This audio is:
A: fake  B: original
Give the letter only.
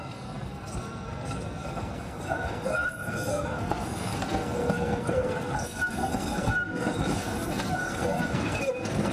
A